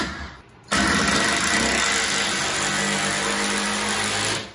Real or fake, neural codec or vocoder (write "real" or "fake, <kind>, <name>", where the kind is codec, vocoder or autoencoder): real